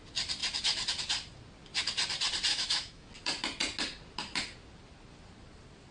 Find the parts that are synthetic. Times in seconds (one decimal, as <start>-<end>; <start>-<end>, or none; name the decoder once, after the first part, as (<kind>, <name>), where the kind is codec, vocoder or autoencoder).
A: 2.5-3.1 (autoencoder, DAC-VAE)